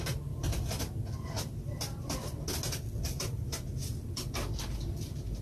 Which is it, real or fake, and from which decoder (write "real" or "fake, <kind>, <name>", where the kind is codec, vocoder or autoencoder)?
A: real